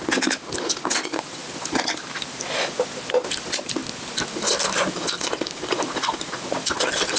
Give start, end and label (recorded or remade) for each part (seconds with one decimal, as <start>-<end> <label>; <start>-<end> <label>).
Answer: 0.0-7.2 recorded